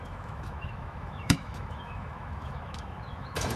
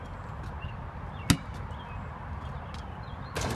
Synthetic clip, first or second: first